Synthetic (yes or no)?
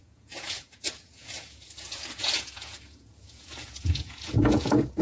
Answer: yes